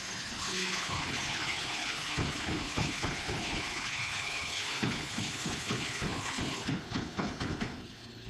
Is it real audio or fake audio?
fake